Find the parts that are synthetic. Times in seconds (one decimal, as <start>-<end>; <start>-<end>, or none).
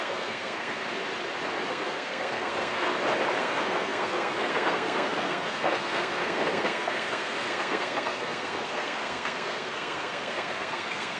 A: 0.0-0.8; 1.7-2.9; 3.4-11.2